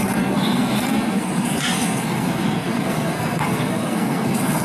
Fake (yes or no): yes